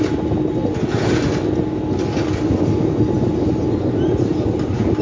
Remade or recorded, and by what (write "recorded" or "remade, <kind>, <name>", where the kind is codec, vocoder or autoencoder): recorded